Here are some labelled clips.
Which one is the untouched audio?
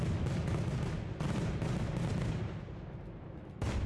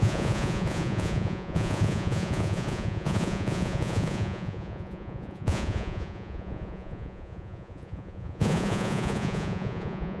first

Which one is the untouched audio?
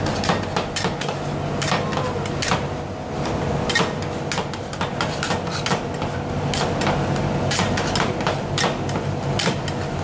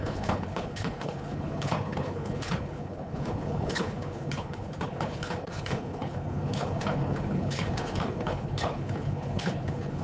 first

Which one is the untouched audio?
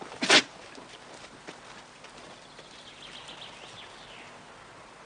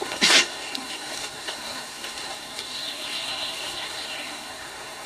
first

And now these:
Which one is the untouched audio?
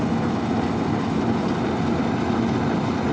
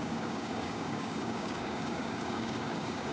first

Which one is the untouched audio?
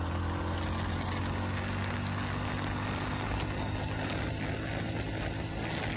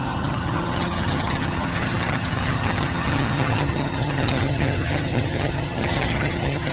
first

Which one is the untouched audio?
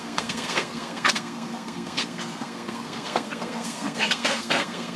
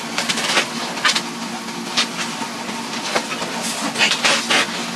second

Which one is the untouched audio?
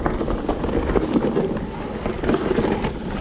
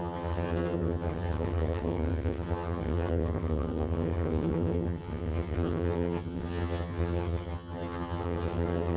first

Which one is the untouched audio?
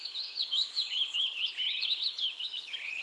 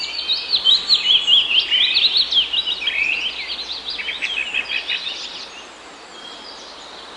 second